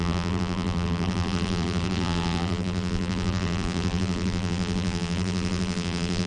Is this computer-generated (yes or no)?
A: yes